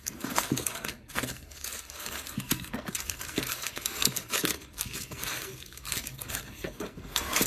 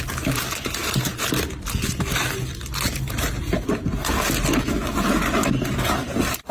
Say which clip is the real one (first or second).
second